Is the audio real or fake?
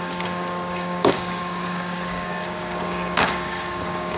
fake